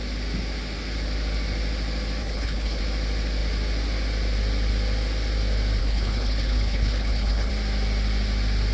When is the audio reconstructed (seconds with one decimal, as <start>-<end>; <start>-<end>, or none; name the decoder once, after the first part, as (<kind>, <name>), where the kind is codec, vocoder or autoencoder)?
2.2-2.8 (codec, HILCodec); 5.8-7.5